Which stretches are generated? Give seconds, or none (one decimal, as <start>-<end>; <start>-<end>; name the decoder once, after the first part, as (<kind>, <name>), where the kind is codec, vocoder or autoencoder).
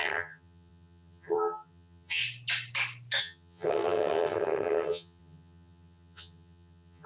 0.0-2.2 (vocoder, HiFi-GAN); 3.2-7.1